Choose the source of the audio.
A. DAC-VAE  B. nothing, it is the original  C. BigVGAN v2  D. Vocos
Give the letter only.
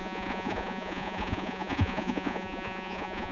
D